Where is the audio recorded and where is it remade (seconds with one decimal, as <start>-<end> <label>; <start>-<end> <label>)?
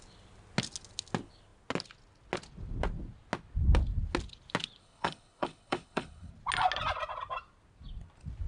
0.0-4.8 recorded; 4.8-6.3 remade; 6.3-8.5 recorded